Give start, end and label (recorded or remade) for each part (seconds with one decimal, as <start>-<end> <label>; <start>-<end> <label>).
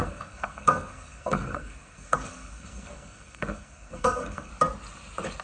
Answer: 0.0-4.5 remade; 4.5-5.4 recorded